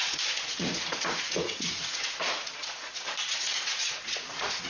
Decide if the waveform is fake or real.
fake